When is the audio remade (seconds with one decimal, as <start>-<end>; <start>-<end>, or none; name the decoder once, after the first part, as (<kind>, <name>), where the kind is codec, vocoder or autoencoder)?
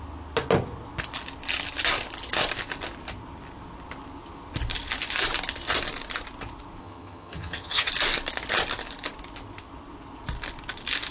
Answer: 6.8-7.9 (vocoder, HiFi-GAN)